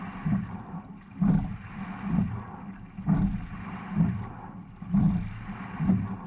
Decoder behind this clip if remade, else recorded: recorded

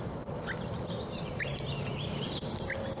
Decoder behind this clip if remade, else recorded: recorded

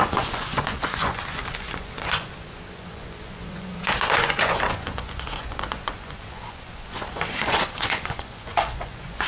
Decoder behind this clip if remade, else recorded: remade, vocoder, Vocos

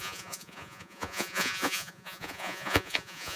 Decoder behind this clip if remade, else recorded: remade, vocoder, Vocos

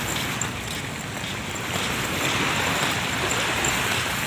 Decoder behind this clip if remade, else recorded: recorded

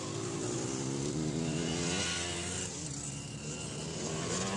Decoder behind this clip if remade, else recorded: recorded